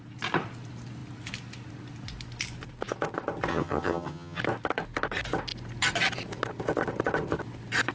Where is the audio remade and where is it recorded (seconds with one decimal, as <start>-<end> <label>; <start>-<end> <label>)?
0.0-3.5 recorded; 3.5-4.4 remade; 4.4-7.9 recorded